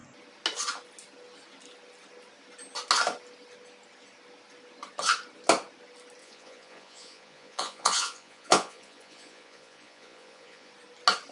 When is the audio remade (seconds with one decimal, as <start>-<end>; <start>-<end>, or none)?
6.2-10.7